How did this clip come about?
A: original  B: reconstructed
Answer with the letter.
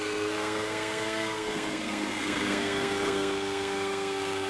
B